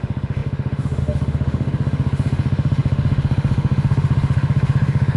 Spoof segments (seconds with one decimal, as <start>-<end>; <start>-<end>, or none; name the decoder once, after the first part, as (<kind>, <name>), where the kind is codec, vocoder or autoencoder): 0.0-5.2 (autoencoder, DAC-VAE)